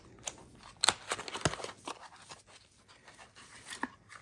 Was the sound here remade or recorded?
recorded